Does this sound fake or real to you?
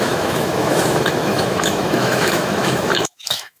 fake